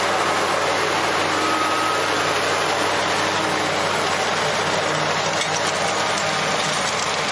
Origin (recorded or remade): recorded